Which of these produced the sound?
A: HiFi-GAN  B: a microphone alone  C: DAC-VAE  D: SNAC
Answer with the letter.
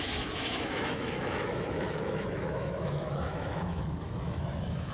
C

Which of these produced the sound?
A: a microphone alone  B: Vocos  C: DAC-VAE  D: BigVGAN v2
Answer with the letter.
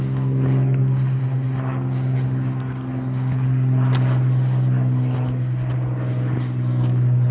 A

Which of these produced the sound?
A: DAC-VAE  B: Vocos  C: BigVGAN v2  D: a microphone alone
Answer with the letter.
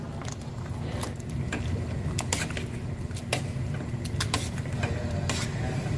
D